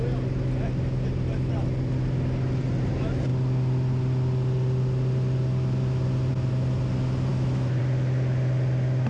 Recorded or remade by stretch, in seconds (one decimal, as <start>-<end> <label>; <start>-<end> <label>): 0.0-7.3 recorded; 7.3-7.8 remade; 7.8-9.1 recorded